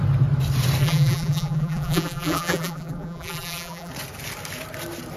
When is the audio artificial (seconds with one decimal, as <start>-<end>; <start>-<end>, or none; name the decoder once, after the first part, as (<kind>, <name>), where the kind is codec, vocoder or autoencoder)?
0.8-3.9 (vocoder, BigVGAN v2)